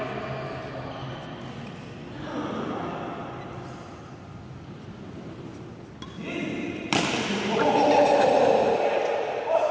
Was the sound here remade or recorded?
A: recorded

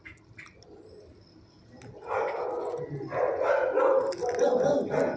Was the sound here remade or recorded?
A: recorded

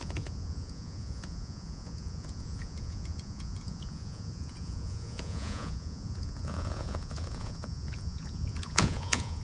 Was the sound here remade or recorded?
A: remade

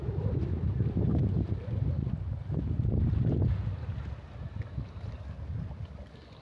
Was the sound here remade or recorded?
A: recorded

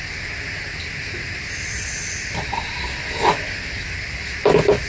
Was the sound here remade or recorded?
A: recorded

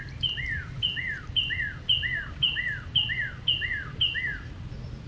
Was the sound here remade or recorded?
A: recorded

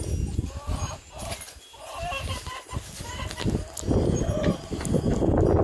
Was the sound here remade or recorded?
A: recorded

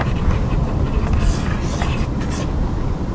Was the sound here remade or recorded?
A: recorded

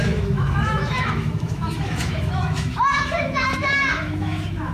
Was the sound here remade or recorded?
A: remade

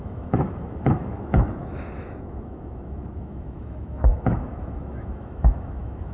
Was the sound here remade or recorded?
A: remade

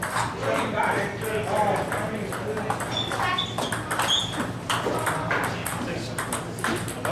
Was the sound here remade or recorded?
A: recorded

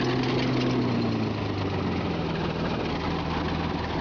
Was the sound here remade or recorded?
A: recorded